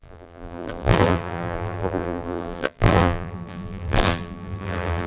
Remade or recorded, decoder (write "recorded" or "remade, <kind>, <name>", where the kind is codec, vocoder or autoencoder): remade, vocoder, BigVGAN v2